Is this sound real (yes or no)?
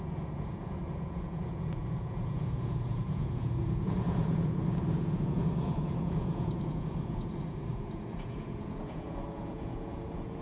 no